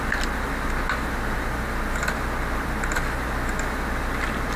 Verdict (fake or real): real